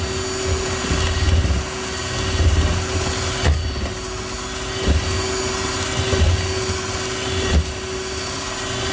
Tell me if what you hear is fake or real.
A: real